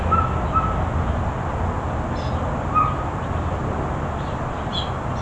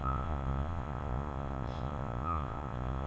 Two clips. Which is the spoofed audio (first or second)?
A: second